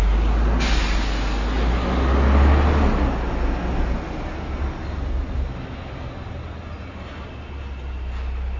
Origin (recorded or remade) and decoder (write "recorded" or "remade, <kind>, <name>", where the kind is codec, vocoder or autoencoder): recorded